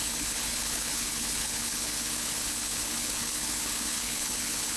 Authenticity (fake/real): fake